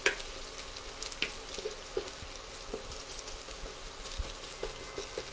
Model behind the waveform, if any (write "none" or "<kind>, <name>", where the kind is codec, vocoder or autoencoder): none